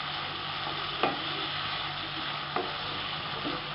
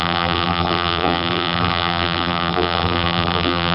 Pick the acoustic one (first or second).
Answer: first